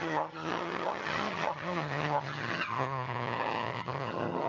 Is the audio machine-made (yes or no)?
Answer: yes